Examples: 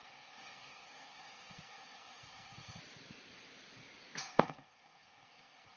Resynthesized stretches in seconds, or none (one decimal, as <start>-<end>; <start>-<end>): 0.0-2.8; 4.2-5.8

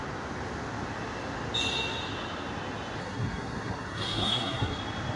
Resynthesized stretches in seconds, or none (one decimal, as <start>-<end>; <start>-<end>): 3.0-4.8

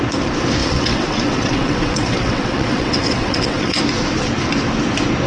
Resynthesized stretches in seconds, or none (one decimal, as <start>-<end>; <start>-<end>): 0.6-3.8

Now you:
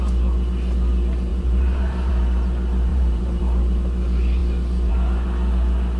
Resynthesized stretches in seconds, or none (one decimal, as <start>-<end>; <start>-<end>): 1.3-2.1; 2.9-3.4